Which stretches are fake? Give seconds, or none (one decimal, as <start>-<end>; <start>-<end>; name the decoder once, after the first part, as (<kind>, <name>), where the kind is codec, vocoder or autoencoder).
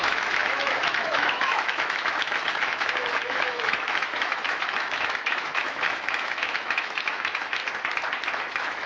0.0-7.6 (autoencoder, DAC-VAE); 8.4-8.9